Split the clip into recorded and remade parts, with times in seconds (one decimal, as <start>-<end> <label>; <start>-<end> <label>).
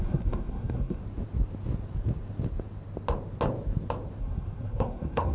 0.0-1.0 remade; 1.0-4.2 recorded; 4.2-5.3 remade